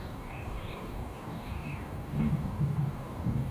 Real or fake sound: fake